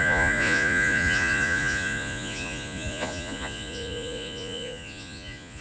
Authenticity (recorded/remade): remade